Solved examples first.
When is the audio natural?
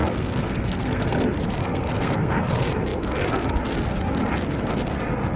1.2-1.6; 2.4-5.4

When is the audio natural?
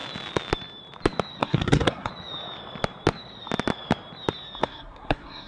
0.0-1.4; 2.1-4.6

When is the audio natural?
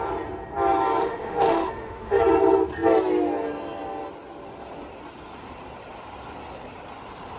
0.0-1.0; 2.2-7.4